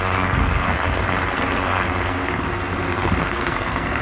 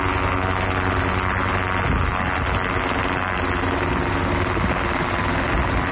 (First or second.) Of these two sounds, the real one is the second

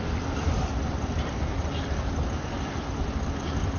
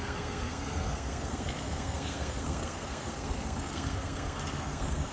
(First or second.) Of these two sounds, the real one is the first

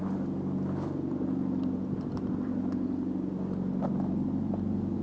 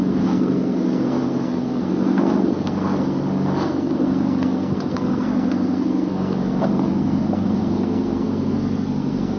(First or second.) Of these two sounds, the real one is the first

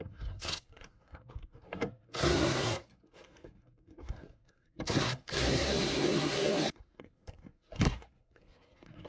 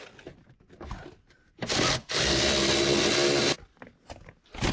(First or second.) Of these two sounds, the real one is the second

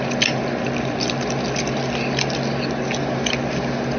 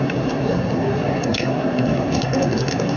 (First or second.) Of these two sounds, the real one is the first